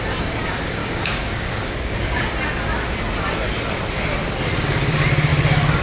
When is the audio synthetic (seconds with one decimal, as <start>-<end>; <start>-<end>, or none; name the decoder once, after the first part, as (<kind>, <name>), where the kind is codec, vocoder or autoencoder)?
0.8-2.3 (codec, DAC)